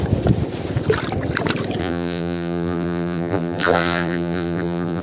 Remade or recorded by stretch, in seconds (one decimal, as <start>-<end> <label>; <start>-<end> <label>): 0.0-1.8 recorded; 1.8-5.0 remade